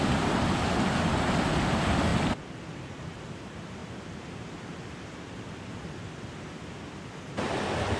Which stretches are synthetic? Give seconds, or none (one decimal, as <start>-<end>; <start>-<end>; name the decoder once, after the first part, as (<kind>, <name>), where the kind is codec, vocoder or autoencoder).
none